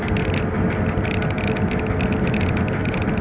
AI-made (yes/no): no